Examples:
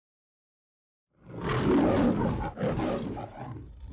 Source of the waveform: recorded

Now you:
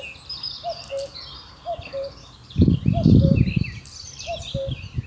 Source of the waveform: recorded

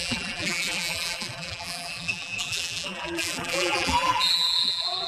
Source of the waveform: remade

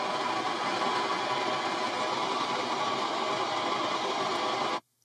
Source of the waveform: recorded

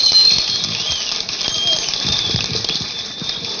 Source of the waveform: remade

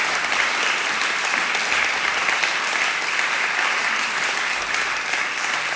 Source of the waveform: recorded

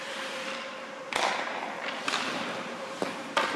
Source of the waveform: remade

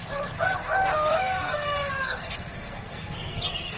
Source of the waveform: remade